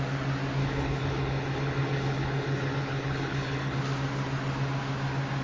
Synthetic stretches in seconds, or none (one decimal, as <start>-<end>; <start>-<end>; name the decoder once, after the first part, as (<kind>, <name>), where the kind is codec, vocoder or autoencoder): 0.6-3.8 (codec, HILCodec)